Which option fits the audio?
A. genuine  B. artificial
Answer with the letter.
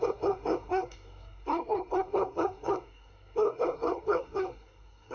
B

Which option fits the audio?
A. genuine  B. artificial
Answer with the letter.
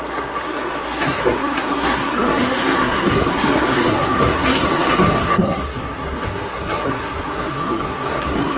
B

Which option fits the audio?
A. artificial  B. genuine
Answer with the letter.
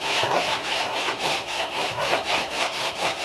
A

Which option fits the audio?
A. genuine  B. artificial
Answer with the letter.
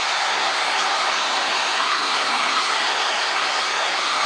B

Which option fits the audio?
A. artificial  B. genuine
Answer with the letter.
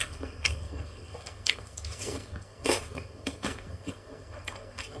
A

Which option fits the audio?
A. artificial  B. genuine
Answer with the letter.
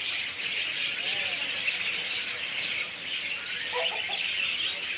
B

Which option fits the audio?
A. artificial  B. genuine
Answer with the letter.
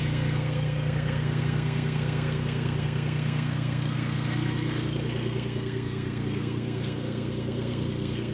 A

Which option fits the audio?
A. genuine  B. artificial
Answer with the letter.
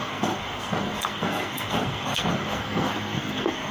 B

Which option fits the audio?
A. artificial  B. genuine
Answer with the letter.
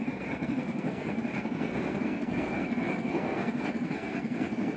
A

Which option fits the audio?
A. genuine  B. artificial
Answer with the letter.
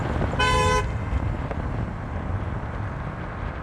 A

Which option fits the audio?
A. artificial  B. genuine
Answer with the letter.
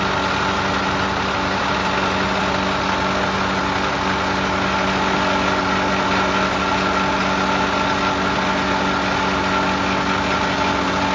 B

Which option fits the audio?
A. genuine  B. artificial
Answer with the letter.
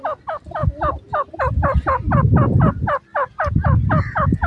A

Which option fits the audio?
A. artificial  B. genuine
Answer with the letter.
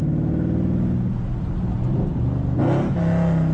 B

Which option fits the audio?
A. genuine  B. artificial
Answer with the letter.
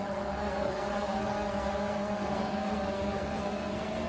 B